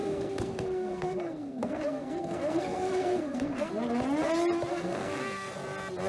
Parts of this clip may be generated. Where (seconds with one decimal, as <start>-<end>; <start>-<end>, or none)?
0.0-3.7; 4.7-5.5